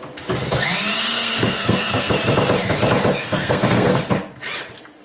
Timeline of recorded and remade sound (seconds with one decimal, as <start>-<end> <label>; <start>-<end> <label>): 0.0-0.9 recorded; 0.9-2.1 remade; 2.1-3.2 recorded; 3.2-4.0 remade; 4.0-5.0 recorded